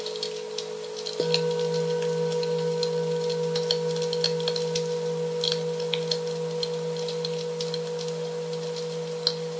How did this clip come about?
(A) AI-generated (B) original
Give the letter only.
B